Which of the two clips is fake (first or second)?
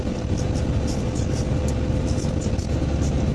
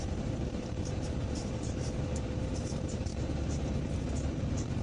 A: second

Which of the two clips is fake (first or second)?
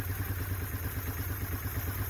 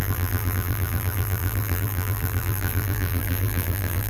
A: second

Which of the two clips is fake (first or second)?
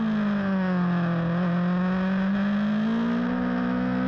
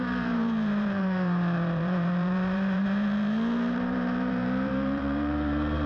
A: second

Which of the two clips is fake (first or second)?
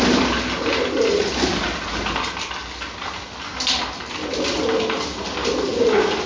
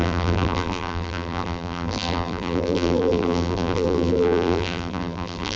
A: second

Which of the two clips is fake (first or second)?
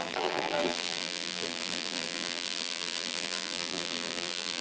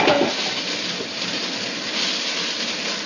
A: first